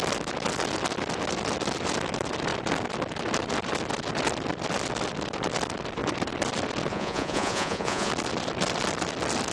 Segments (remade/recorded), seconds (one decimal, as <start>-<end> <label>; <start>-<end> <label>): 0.0-6.9 recorded; 6.9-8.1 remade; 8.1-9.5 recorded